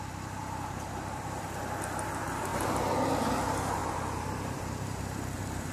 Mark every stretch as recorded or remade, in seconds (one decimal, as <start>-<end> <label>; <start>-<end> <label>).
0.0-0.4 recorded; 0.4-1.6 remade; 1.6-3.8 recorded; 3.8-5.7 remade